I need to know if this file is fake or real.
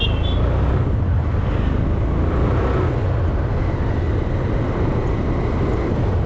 real